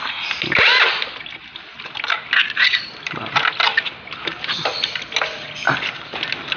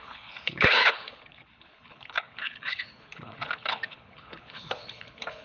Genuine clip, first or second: first